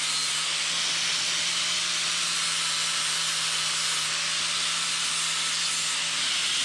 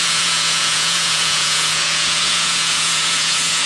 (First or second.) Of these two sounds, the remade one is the second